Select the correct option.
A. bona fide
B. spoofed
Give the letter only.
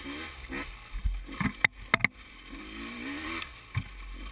A